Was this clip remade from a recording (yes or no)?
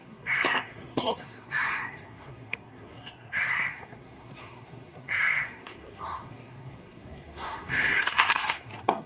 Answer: yes